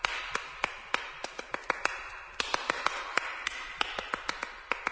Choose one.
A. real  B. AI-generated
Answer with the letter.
A